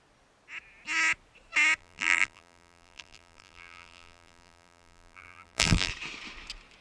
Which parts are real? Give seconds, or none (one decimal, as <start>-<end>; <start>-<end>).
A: 0.0-1.8; 5.9-6.8